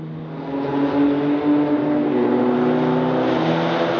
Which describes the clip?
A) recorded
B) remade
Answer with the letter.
A